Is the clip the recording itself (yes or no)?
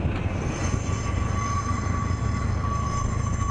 yes